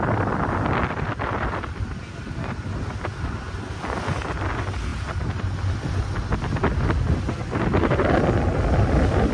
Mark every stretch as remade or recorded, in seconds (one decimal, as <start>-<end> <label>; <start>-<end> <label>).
0.0-9.3 recorded